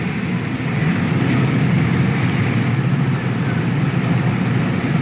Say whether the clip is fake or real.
real